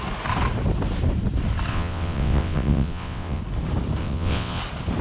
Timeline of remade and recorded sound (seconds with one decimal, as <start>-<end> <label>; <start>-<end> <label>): 0.0-1.7 recorded; 1.7-3.4 remade; 3.4-4.0 recorded; 4.0-4.6 remade; 4.6-5.0 recorded